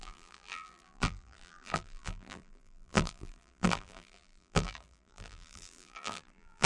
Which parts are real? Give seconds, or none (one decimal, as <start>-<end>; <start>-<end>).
none